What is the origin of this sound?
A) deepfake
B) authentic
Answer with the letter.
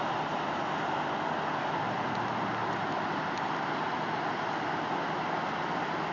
B